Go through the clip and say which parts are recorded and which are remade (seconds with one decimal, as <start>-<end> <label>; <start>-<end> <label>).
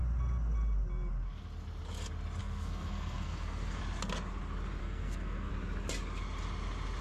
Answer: 0.0-2.4 recorded; 2.4-3.8 remade; 3.8-4.8 recorded; 4.8-5.5 remade; 5.5-7.0 recorded